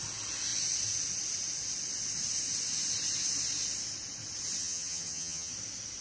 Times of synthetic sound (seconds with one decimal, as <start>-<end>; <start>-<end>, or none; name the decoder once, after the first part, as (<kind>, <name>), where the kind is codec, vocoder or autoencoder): 4.6-5.5 (vocoder, HiFi-GAN)